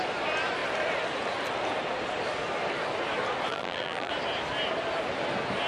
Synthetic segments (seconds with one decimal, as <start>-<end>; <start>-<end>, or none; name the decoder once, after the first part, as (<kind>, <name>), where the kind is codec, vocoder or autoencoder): 3.5-4.1 (vocoder, BigVGAN v2)